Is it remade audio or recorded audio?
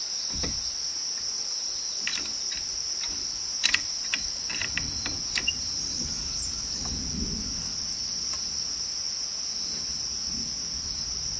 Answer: recorded